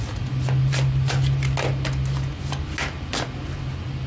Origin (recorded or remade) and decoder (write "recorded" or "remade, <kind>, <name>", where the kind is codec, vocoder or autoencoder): recorded